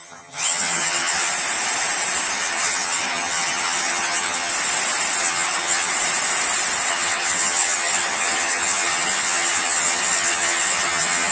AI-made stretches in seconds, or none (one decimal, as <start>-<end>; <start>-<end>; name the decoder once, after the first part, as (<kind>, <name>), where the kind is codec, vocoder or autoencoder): 0.0-1.3 (vocoder, HiFi-GAN); 2.3-4.5; 5.2-5.9; 6.9-11.3